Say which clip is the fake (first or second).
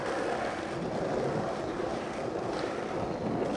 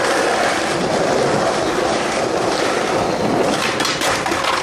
second